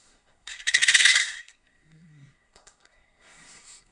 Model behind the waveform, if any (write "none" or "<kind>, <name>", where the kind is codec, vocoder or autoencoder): codec, SNAC